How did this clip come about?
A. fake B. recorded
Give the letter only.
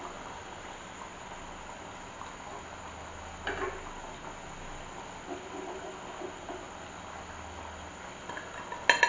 B